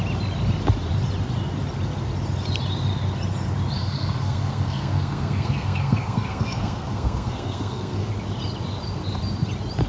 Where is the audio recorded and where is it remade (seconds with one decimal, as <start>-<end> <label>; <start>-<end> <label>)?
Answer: 0.0-3.8 recorded; 3.8-8.1 remade; 8.1-9.9 recorded